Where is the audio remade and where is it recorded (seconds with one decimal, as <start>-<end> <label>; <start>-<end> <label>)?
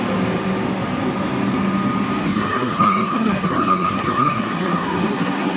0.0-2.2 recorded; 2.2-5.6 remade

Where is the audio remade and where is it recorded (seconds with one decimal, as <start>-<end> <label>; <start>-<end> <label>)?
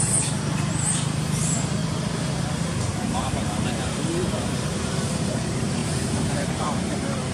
0.0-1.8 remade; 1.8-3.1 recorded; 3.1-7.3 remade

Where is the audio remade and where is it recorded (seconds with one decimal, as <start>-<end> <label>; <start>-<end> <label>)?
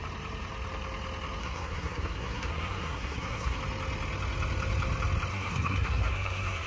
0.0-1.4 recorded; 1.4-3.6 remade; 3.6-5.3 recorded; 5.3-6.7 remade